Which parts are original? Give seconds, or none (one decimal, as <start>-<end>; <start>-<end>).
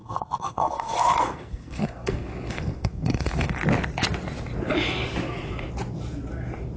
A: 3.6-6.8